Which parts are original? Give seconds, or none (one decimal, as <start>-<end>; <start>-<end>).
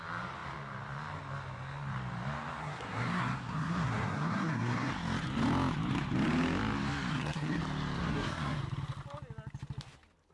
0.0-2.6; 4.9-7.1; 7.6-8.0; 8.6-10.3